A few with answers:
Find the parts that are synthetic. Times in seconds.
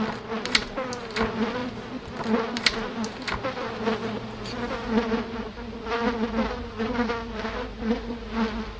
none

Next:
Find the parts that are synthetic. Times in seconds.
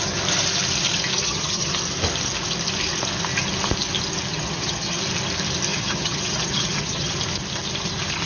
1.2-1.7 (vocoder, HiFi-GAN); 4.3-5.0; 5.7-7.1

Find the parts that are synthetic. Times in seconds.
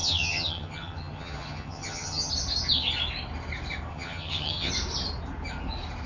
0.0-2.3 (vocoder, HiFi-GAN); 3.9-4.7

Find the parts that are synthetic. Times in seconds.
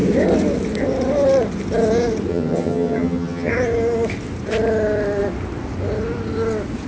2.3-3.5 (vocoder, HiFi-GAN)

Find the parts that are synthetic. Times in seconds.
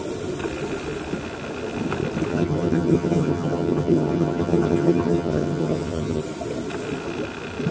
2.3-6.2 (vocoder, HiFi-GAN)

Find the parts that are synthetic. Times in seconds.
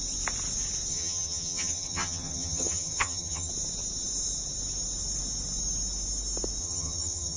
0.9-3.5 (vocoder, HiFi-GAN); 6.6-7.4